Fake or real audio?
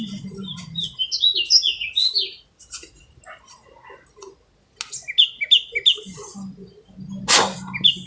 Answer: real